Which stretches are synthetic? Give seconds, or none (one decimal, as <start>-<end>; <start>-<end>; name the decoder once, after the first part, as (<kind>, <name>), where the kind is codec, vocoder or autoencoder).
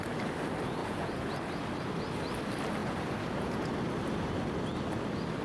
0.8-1.4 (vocoder, Vocos); 2.8-3.7